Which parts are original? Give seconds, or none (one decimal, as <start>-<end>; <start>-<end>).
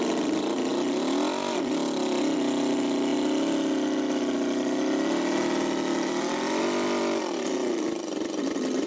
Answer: 0.0-8.9